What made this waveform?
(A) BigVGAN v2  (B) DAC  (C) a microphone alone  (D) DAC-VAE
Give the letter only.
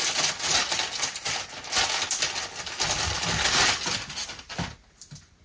C